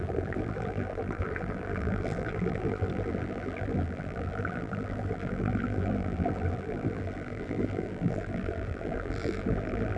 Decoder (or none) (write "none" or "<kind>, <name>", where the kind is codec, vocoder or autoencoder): vocoder, BigVGAN v2